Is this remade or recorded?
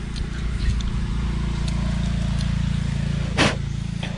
recorded